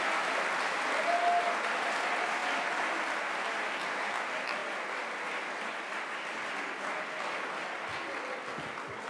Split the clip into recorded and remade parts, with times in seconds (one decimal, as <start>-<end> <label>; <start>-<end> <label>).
0.0-9.1 recorded